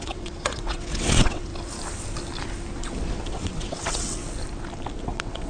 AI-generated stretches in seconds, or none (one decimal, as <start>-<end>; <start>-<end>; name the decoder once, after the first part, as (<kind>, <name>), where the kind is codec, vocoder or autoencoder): 0.0-1.5 (vocoder, WaveNeXt); 3.3-4.2; 5.0-5.5